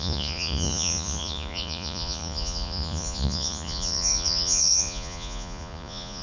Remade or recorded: remade